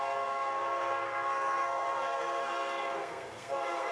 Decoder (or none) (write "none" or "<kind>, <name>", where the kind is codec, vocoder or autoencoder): codec, SNAC